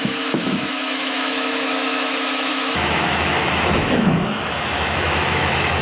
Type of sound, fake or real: fake